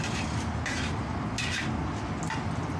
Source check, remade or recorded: recorded